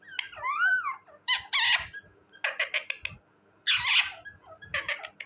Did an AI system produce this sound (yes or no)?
no